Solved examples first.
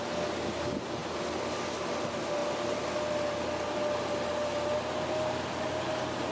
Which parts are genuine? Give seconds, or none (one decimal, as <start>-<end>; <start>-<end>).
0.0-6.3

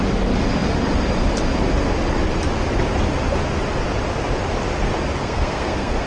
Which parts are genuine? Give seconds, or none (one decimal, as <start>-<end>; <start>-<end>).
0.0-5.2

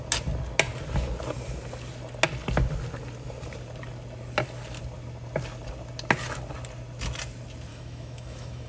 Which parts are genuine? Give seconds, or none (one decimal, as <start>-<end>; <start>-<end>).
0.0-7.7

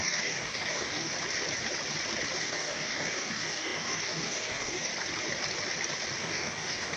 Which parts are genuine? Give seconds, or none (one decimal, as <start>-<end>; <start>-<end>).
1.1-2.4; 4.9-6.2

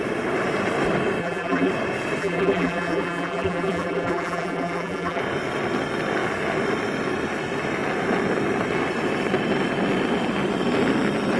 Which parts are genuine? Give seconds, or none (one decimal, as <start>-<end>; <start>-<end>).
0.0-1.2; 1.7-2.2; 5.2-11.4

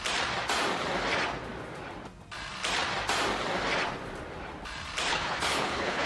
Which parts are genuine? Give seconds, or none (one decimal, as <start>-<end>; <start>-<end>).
0.0-5.1